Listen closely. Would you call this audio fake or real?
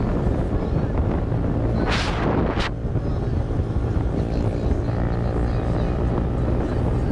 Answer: real